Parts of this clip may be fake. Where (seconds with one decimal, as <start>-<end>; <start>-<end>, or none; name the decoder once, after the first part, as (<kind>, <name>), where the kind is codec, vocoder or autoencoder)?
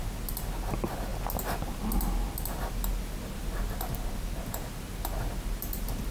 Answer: none